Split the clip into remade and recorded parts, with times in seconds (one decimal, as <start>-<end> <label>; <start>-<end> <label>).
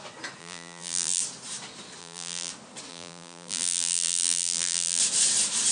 0.0-0.4 recorded; 0.4-1.2 remade; 1.2-2.0 recorded; 2.0-2.5 remade; 2.5-2.9 recorded; 2.9-5.0 remade; 5.0-5.7 recorded